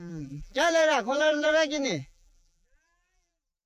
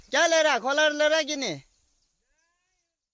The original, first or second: second